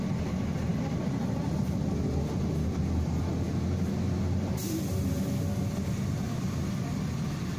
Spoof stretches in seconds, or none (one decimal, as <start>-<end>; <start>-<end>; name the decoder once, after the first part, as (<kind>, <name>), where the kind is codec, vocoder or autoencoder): none